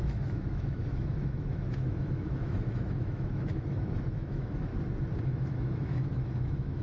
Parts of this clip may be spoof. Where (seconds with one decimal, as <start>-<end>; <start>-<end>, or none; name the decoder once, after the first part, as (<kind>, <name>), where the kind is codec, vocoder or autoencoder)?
0.0-4.7 (autoencoder, DAC-VAE); 5.2-6.8